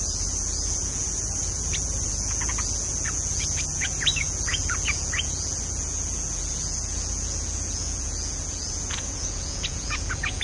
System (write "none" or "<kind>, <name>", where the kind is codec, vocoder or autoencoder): vocoder, Vocos